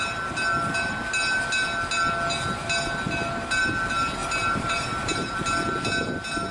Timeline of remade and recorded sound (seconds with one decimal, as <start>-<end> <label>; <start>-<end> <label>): 0.0-4.2 recorded; 4.2-5.4 remade; 5.4-6.5 recorded